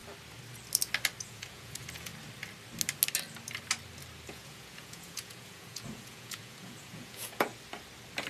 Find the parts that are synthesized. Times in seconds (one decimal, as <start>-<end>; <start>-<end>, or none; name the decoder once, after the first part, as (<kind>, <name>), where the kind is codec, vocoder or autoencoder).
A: 1.2-2.1 (vocoder, Vocos); 4.3-7.5